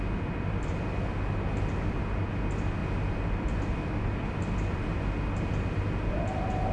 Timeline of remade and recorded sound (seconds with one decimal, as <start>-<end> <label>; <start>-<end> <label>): 0.0-6.7 recorded